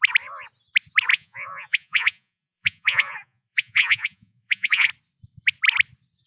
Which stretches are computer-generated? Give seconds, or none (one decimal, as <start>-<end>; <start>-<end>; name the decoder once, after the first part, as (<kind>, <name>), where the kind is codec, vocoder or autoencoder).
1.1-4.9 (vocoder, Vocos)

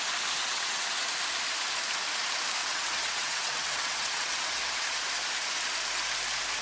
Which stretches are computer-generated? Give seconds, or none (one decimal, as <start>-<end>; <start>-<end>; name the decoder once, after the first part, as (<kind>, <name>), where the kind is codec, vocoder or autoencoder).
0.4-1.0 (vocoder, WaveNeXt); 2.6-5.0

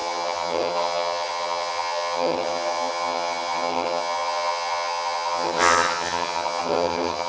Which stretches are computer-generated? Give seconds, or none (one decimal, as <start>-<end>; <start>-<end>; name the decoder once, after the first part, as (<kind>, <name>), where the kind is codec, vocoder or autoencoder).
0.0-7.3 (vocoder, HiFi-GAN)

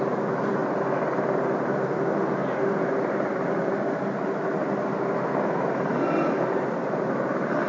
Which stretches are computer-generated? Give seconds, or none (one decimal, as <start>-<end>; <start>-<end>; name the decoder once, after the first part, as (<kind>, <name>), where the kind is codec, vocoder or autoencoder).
none

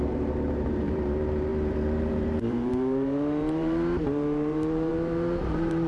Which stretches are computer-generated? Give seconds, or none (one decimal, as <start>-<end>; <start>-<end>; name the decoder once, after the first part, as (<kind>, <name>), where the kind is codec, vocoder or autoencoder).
0.0-5.9 (vocoder, BigVGAN v2)

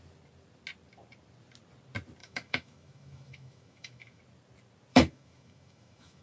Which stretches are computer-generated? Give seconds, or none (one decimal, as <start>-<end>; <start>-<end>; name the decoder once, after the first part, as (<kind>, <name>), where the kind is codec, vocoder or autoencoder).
2.2-4.2 (autoencoder, DAC-VAE); 4.9-6.2